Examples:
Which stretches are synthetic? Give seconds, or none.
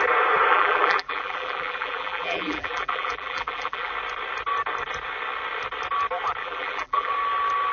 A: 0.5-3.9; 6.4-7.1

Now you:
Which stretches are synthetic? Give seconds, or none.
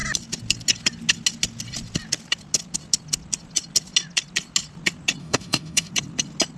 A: 5.2-5.9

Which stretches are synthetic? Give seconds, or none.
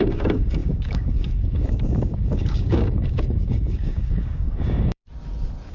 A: 0.0-5.0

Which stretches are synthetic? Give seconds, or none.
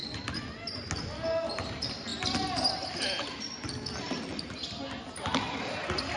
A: none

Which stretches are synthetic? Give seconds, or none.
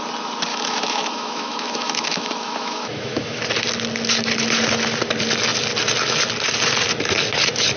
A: 0.5-3.4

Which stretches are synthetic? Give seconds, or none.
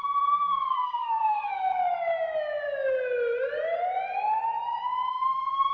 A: 0.0-1.7; 5.1-5.7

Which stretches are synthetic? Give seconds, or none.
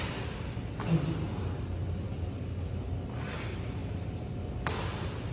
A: none